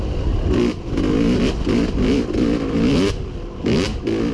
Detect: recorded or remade recorded